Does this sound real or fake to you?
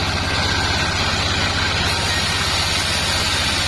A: real